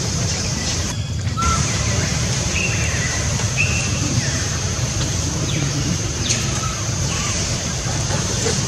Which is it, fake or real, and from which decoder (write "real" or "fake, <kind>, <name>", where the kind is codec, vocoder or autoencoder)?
fake, vocoder, BigVGAN v2